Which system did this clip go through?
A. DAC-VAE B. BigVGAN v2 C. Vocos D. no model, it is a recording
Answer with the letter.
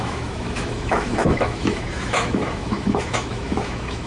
A